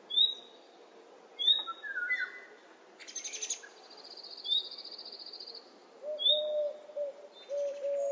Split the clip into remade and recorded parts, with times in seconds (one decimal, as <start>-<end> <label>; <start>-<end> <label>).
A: 0.0-8.1 recorded